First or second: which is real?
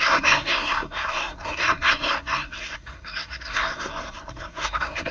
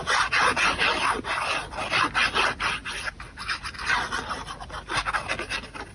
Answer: second